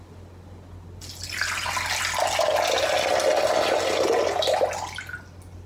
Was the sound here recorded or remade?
recorded